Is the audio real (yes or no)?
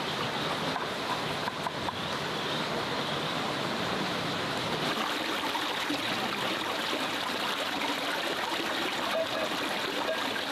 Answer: yes